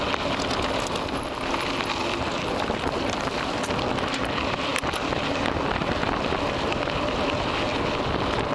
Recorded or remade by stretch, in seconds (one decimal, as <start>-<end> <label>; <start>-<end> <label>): 0.0-8.5 recorded